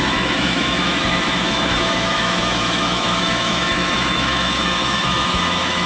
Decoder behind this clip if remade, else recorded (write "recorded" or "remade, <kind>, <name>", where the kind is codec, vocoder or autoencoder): remade, autoencoder, DAC-VAE